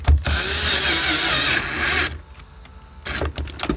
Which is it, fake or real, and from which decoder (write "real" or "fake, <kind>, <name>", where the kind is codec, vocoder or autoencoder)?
real